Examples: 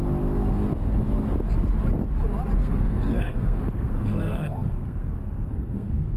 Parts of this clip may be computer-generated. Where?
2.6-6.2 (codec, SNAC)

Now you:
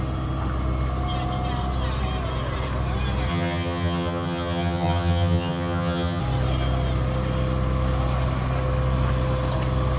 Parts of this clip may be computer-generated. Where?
3.3-6.2 (vocoder, HiFi-GAN)